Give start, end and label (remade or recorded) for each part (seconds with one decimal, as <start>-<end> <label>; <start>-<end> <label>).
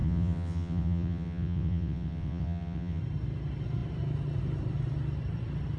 0.0-3.0 remade; 3.0-5.8 recorded